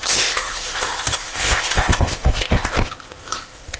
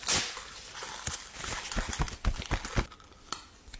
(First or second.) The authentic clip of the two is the second